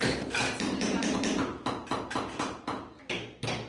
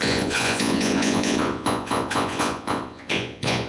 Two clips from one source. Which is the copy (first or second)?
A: second